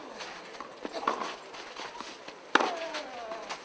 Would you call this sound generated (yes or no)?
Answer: no